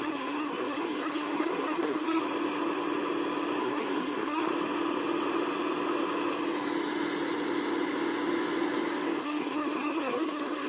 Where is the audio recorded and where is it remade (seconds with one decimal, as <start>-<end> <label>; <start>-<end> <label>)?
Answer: 0.0-2.2 remade; 2.2-3.6 recorded; 3.6-4.5 remade; 4.5-9.2 recorded; 9.2-10.7 remade